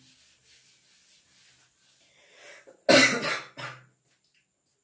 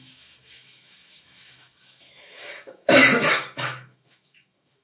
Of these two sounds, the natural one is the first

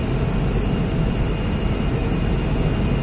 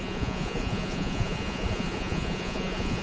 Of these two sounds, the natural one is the first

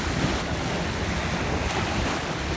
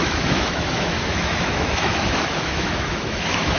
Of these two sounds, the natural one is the first